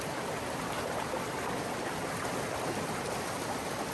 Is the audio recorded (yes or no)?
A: yes